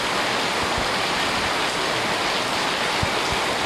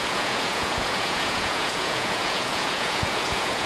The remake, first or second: second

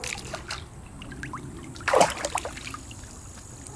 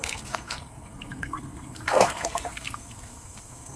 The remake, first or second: second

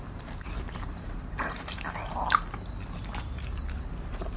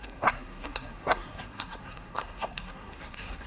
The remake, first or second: second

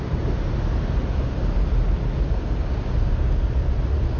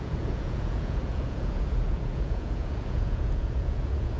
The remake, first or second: second